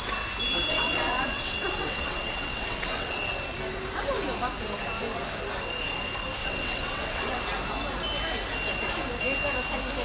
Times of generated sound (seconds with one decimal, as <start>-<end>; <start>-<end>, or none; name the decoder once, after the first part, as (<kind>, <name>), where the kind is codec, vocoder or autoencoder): 0.7-3.3 (vocoder, WaveNeXt); 6.4-7.4